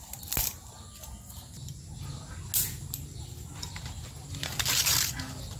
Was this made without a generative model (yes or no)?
yes